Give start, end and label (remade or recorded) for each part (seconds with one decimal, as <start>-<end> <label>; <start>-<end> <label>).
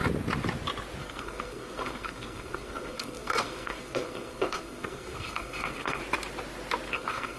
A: 0.0-1.0 recorded; 1.0-6.0 remade; 6.0-6.9 recorded; 6.9-7.4 remade